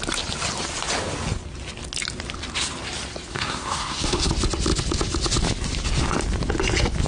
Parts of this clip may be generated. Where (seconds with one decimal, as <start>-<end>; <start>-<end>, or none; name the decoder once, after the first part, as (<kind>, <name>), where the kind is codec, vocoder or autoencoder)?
3.3-4.3 (codec, SNAC)